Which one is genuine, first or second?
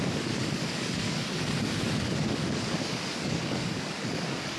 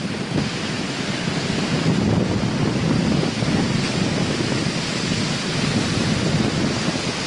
second